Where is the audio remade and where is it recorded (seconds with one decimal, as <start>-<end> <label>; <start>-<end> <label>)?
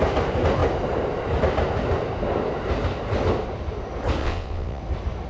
0.0-4.2 recorded; 4.2-4.8 remade; 4.8-5.3 recorded